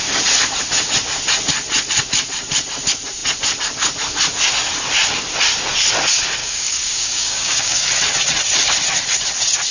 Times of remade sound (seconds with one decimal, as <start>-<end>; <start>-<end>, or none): 6.4-7.9